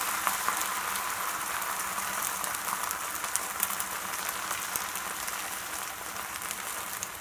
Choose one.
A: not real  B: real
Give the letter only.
B